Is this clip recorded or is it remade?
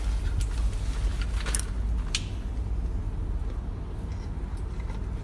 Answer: recorded